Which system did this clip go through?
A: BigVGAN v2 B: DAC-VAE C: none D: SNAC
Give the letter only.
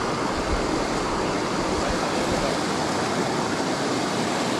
C